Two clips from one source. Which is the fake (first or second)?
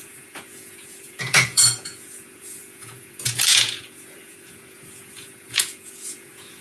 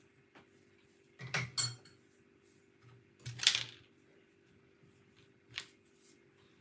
first